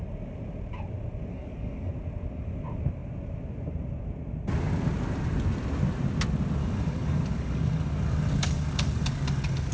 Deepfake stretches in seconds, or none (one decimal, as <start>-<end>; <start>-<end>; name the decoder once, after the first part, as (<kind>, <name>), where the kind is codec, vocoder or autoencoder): 1.3-1.9 (codec, DAC); 6.6-9.7